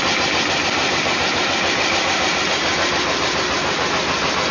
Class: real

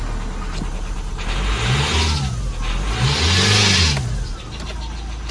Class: real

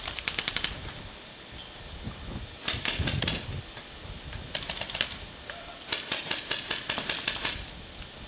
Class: real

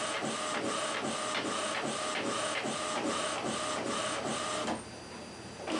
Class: real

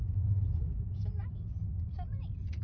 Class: real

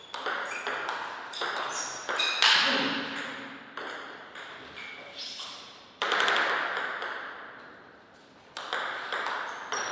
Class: real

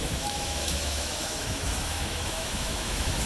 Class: fake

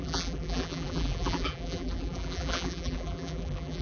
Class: fake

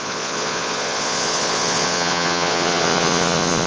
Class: fake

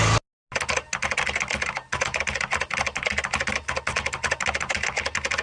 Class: real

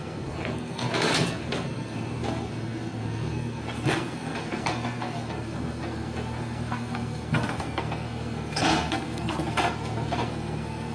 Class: fake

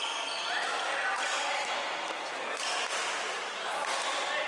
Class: real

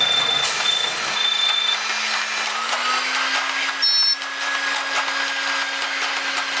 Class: real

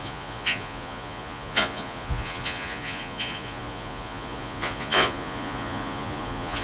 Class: fake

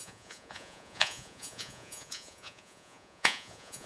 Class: fake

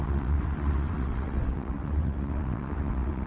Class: fake